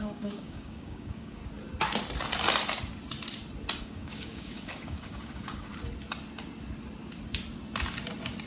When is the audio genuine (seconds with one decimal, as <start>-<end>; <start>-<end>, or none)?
1.4-3.8; 5.7-8.5